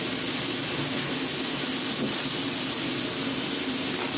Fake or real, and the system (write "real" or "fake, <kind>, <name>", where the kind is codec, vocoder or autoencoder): real